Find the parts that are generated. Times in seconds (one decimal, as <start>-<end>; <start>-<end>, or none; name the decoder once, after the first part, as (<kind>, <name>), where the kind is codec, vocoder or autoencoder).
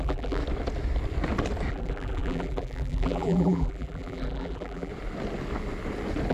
0.0-0.4 (vocoder, BigVGAN v2); 1.7-4.9